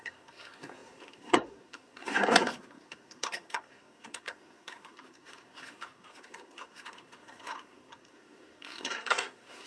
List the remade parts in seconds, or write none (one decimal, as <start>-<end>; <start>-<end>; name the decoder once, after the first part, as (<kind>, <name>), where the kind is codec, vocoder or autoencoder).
0.0-9.7 (codec, SNAC)

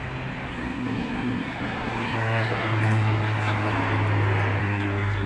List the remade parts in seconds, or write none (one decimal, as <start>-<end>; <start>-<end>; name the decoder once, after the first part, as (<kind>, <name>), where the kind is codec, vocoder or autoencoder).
0.5-3.7 (codec, SNAC); 4.6-5.3

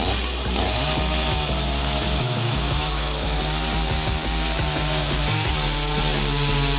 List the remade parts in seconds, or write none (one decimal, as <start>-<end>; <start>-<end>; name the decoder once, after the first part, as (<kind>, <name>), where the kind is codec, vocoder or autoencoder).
1.8-3.4 (autoencoder, DAC-VAE)

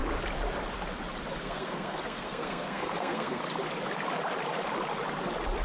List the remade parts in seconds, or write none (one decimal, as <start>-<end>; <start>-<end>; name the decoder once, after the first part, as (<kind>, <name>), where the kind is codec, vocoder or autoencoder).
1.4-3.4 (codec, SNAC)

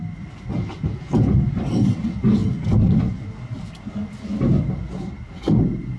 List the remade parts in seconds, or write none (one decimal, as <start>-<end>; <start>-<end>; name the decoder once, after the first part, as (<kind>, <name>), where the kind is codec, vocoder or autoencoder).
none